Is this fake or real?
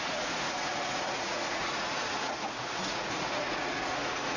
fake